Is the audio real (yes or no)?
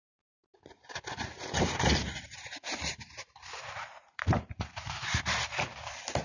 no